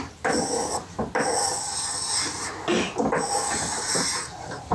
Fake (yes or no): no